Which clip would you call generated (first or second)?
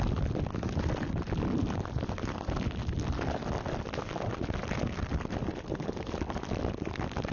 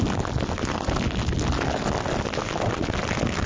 first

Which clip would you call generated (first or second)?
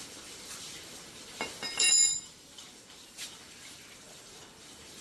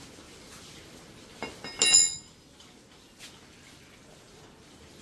first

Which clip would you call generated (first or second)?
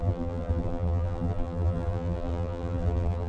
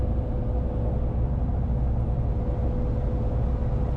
first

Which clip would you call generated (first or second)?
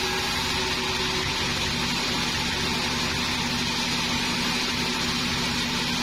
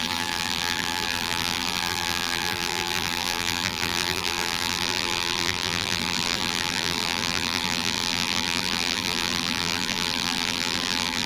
second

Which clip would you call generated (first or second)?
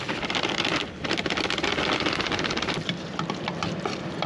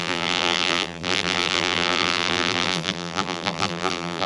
second